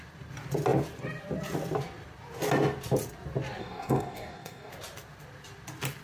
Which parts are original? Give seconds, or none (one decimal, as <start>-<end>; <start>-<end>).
0.0-3.6; 4.7-6.0